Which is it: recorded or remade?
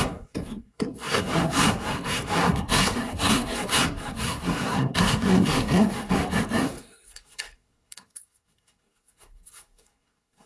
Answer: remade